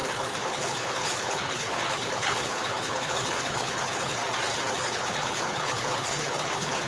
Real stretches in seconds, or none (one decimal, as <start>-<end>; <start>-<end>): 4.2-4.8